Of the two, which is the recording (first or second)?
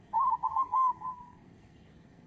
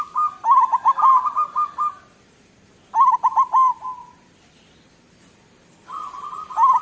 second